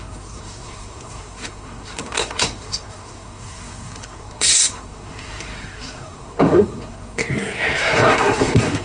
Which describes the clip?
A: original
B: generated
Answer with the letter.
B